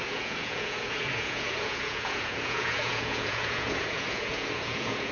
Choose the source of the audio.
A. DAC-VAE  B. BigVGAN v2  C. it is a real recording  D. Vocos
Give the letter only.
D